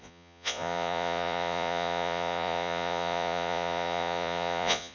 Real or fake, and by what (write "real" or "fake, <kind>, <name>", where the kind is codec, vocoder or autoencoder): fake, vocoder, Vocos